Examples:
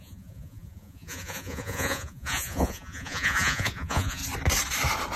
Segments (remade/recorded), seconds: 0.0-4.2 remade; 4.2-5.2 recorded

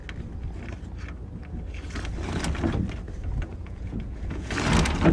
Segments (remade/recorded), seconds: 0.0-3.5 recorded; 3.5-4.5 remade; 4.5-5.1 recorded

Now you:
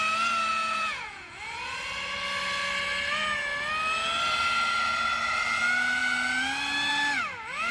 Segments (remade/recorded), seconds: 0.0-0.5 recorded; 0.5-1.4 remade; 1.4-7.7 recorded